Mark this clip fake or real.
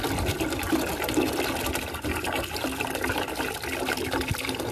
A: real